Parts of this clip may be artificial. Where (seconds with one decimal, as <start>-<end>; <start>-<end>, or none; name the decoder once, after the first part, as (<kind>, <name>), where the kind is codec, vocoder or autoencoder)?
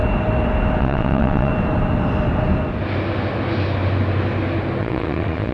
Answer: 0.8-1.5 (vocoder, WaveNeXt); 4.8-5.5